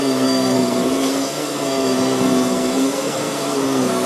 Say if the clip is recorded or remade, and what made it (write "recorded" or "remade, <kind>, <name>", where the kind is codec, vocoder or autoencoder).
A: remade, codec, SNAC